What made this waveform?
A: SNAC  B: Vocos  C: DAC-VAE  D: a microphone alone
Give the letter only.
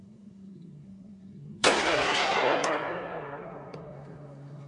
A